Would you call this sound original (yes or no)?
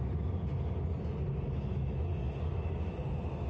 yes